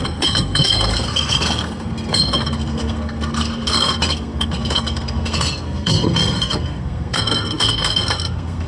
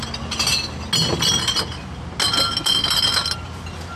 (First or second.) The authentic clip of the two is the second